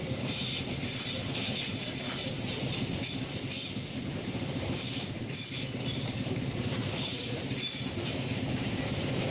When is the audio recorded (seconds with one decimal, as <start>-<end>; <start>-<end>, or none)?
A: 0.0-0.6; 3.4-4.0

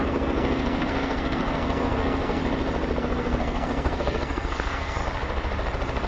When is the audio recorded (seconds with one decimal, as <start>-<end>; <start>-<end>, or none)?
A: 2.4-3.0; 5.0-6.1

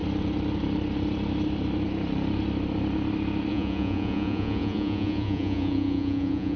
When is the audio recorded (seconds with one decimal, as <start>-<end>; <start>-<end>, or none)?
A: 0.0-3.5

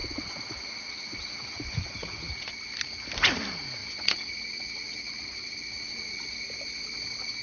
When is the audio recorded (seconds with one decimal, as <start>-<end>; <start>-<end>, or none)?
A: 2.6-3.8; 6.4-7.4

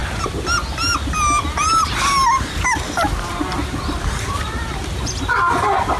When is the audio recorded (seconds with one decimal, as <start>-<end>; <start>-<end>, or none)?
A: 0.0-6.0

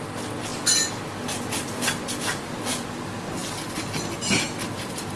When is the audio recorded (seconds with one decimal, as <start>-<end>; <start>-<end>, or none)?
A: 0.0-5.2

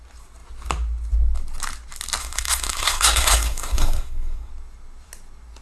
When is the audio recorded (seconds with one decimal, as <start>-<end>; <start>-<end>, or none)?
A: 0.0-2.2; 4.5-5.6